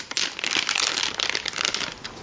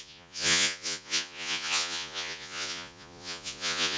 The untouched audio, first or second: first